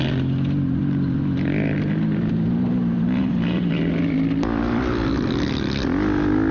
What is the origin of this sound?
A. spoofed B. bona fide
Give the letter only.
A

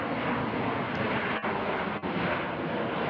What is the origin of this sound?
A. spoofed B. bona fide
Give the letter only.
B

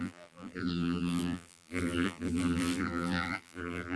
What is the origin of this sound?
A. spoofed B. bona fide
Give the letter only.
A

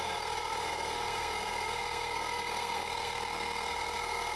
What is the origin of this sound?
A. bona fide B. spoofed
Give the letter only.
B